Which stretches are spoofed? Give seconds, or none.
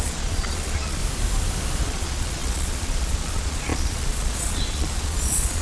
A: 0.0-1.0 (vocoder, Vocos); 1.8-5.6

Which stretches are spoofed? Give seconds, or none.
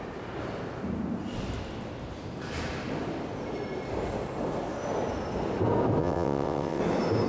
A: 6.0-6.8 (vocoder, WaveNeXt)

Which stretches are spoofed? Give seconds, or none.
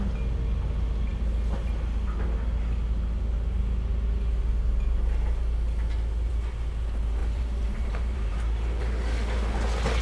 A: 7.2-8.8 (vocoder, BigVGAN v2)